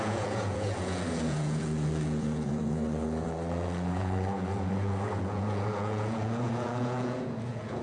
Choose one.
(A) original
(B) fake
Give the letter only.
B